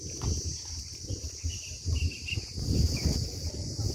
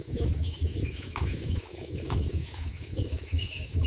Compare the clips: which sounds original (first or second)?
first